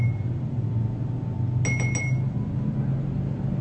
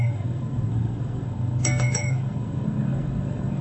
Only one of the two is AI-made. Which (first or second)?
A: second